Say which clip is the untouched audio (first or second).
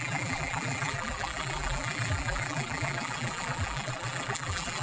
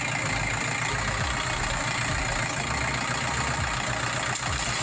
second